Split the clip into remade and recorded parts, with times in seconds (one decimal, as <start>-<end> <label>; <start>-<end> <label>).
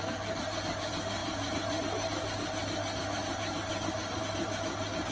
0.0-5.1 recorded